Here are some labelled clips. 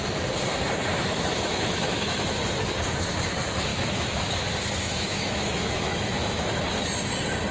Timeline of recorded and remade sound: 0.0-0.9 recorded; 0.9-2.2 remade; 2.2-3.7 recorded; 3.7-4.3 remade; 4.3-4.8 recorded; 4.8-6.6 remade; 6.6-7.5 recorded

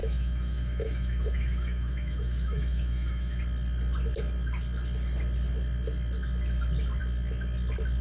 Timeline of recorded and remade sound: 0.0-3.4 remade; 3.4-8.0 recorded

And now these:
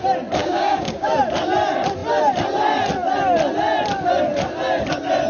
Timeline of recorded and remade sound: 0.0-0.4 recorded; 0.4-1.1 remade; 1.1-5.3 recorded

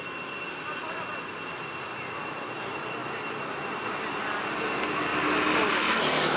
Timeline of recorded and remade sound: 0.0-6.4 recorded

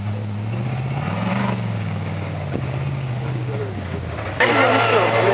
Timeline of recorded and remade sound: 0.0-1.3 recorded; 1.3-4.5 remade; 4.5-5.3 recorded

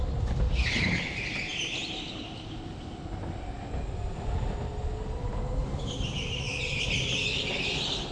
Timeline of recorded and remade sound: 0.0-5.6 recorded; 5.6-7.2 remade; 7.2-8.1 recorded